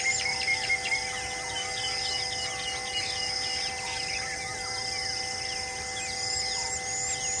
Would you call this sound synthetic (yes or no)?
no